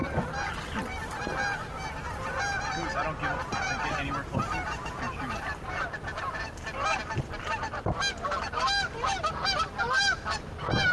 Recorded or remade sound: recorded